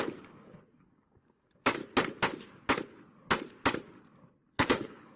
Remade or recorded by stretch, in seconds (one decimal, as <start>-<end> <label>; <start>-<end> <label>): 0.0-1.8 remade; 1.8-4.5 recorded; 4.5-5.2 remade